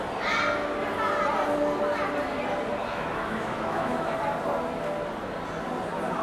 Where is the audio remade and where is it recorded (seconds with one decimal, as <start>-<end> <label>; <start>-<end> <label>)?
0.0-2.8 recorded; 2.8-4.1 remade; 4.1-6.2 recorded